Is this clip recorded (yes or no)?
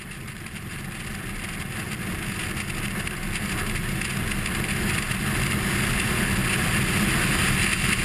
yes